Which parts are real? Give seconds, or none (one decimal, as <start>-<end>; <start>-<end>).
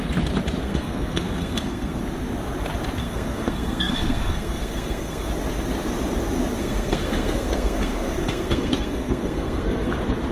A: 0.0-0.6; 2.0-3.0; 5.3-6.6; 9.9-10.3